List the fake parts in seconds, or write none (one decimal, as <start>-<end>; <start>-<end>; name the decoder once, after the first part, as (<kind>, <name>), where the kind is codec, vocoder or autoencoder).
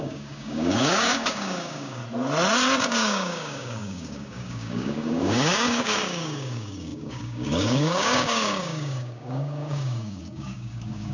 0.0-2.0 (codec, DAC); 2.8-11.1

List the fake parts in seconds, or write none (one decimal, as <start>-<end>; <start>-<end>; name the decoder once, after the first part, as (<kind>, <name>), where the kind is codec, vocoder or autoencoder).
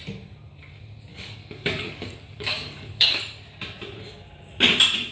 1.1-3.2 (codec, DAC)